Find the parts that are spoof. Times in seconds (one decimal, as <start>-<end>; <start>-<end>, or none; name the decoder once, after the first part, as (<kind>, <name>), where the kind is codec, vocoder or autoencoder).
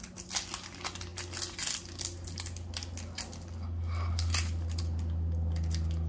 none